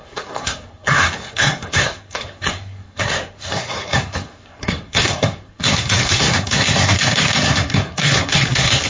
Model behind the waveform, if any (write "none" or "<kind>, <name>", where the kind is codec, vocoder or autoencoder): codec, SNAC